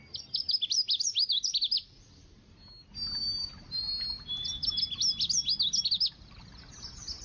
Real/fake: real